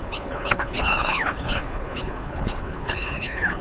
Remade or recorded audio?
remade